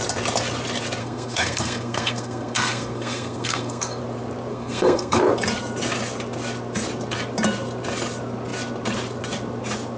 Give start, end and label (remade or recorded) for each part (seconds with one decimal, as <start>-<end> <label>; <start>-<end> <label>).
0.0-1.0 recorded; 1.0-4.0 remade; 4.0-4.5 recorded; 4.5-5.2 remade; 5.2-10.0 recorded